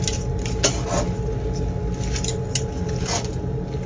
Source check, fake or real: real